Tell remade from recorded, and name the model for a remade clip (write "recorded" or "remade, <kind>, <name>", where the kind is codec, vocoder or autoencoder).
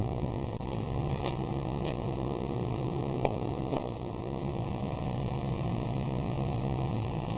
remade, vocoder, WaveNeXt